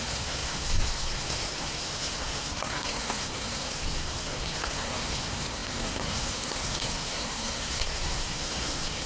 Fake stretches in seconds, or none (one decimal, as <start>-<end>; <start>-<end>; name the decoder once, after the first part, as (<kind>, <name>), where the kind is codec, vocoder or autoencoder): 0.0-9.1 (codec, SNAC)